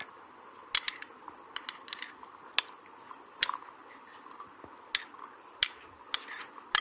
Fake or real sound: real